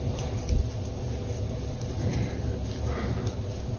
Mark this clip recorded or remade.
recorded